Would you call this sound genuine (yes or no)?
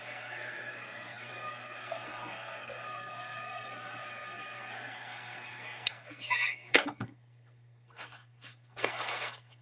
no